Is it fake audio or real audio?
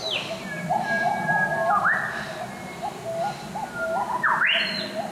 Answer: real